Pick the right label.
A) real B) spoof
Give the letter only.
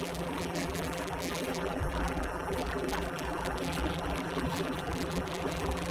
B